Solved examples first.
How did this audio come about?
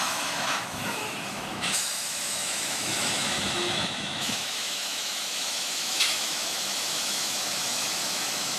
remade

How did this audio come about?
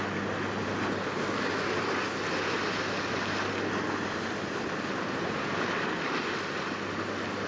recorded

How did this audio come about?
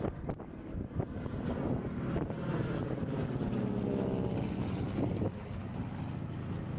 recorded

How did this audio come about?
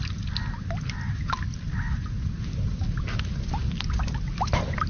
recorded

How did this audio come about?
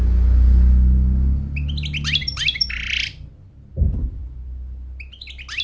recorded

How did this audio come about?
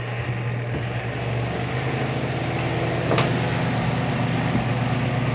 recorded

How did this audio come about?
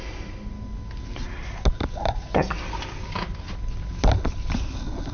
recorded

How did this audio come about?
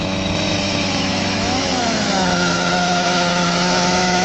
remade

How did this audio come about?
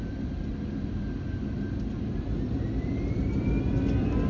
recorded